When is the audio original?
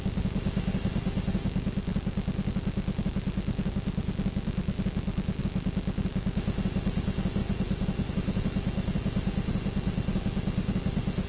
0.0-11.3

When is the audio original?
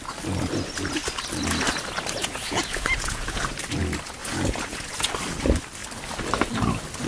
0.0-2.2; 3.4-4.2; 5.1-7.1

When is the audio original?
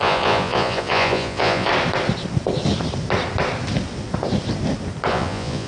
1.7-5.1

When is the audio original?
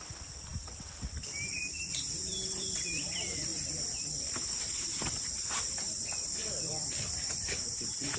none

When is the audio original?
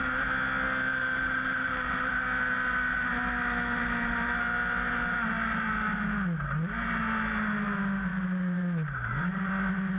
0.0-0.9; 2.1-8.1; 9.5-10.0